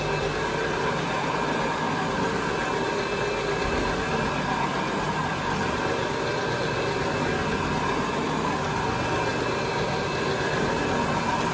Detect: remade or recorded recorded